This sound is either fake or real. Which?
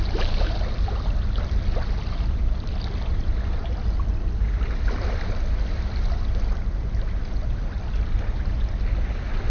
real